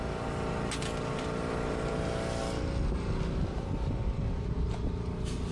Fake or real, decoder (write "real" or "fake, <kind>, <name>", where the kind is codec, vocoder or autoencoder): real